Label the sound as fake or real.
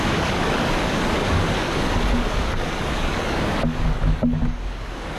fake